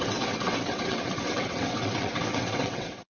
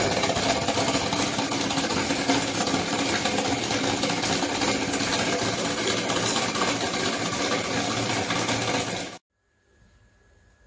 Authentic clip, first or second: second